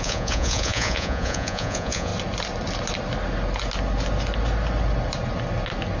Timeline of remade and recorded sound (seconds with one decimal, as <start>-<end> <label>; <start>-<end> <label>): 0.0-2.1 remade; 2.1-6.0 recorded